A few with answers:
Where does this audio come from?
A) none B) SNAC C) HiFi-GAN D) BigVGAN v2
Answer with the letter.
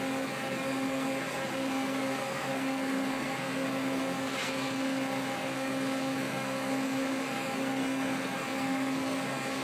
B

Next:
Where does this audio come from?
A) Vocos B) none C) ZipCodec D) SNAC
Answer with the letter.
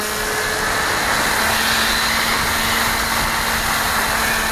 B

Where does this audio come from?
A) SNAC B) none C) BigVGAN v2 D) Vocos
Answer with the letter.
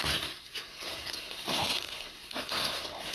A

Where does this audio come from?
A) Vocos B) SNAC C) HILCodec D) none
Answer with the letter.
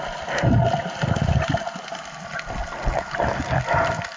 D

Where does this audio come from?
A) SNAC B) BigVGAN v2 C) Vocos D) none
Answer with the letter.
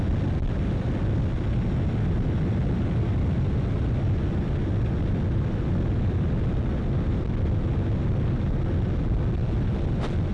D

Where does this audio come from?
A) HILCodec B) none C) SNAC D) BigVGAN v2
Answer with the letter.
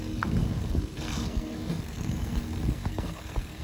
C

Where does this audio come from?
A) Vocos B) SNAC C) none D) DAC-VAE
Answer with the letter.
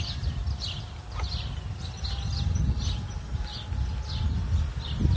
C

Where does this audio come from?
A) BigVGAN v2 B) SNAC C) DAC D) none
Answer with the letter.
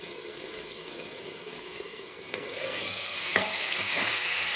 B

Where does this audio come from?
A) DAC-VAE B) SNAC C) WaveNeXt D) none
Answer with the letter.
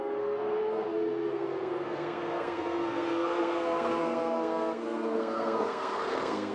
B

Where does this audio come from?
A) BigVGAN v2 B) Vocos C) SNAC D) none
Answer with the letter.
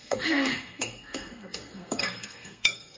C